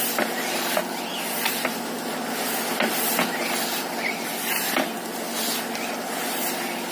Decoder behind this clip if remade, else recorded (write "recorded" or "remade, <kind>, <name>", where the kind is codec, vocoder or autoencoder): recorded